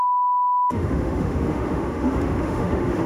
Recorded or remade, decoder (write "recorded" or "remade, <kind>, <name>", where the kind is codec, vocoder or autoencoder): remade, autoencoder, DAC-VAE